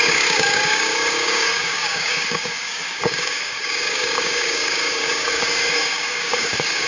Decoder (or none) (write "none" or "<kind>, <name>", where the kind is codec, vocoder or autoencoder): codec, DAC